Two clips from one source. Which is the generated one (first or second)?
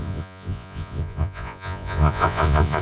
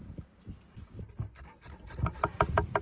first